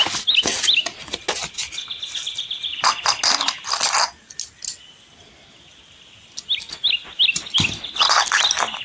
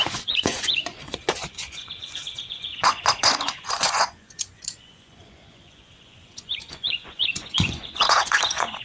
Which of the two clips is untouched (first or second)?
first